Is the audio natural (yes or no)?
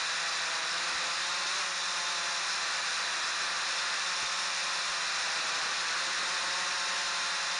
yes